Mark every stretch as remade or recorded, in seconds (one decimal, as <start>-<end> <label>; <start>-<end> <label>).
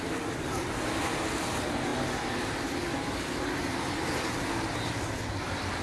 0.0-5.8 recorded